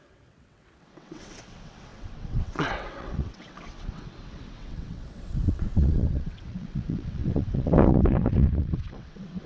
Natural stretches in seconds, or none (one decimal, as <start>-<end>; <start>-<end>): none